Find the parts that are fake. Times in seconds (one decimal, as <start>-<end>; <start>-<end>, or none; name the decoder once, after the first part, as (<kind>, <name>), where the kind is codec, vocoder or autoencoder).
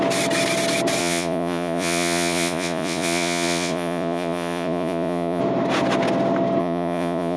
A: 1.0-5.4 (vocoder, Vocos); 6.6-7.4